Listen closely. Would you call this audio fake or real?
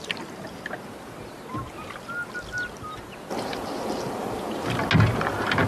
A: real